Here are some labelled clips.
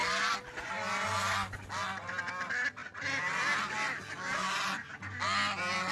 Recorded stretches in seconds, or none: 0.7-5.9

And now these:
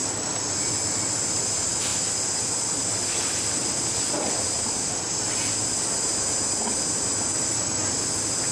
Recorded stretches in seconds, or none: 0.0-8.5

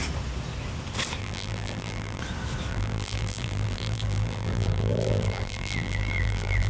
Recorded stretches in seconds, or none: 0.0-1.2; 2.2-2.7

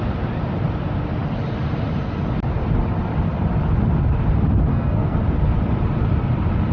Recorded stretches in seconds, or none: 0.0-4.7; 5.2-6.7